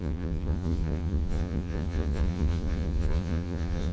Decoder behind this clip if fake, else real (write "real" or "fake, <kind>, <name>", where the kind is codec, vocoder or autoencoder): fake, vocoder, Vocos